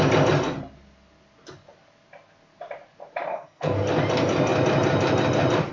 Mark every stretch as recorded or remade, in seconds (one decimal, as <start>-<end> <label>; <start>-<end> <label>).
0.0-3.3 recorded; 3.3-3.8 remade; 3.8-5.7 recorded